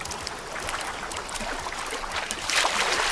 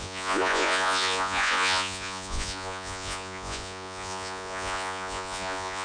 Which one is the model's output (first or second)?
second